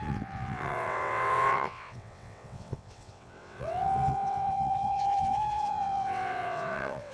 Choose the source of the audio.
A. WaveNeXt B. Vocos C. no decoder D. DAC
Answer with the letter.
A